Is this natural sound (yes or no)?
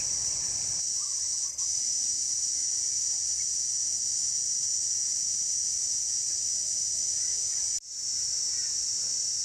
yes